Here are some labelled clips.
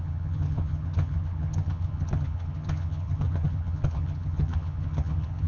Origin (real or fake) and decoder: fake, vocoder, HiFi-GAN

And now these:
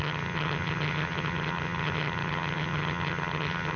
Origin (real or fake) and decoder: fake, vocoder, HiFi-GAN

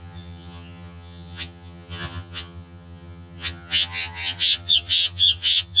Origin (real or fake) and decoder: fake, vocoder, HiFi-GAN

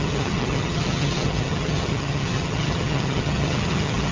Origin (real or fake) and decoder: fake, vocoder, HiFi-GAN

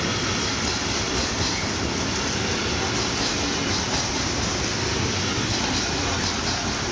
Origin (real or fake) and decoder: real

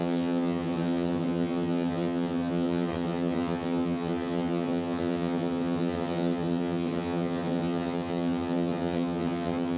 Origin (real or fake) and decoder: fake, vocoder, HiFi-GAN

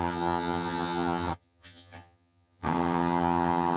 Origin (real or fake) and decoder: fake, vocoder, HiFi-GAN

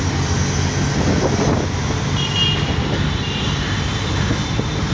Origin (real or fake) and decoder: real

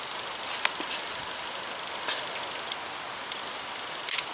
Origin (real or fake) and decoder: real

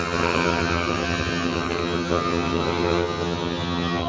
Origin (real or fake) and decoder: fake, vocoder, HiFi-GAN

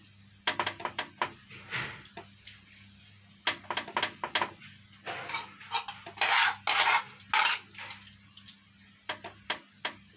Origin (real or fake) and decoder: real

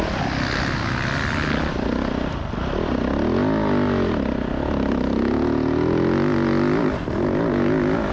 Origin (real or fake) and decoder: real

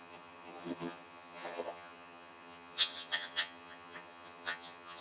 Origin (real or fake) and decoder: fake, vocoder, HiFi-GAN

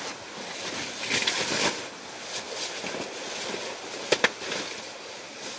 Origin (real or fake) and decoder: real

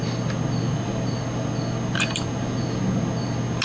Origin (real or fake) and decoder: real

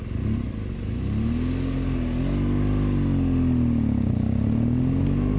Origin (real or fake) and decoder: real